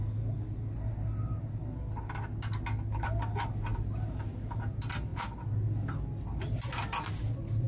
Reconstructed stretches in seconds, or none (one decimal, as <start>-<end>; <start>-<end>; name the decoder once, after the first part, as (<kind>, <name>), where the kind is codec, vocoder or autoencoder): none